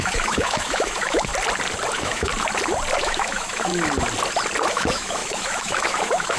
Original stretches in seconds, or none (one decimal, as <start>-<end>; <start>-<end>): 1.3-1.9; 2.3-3.0; 3.7-4.7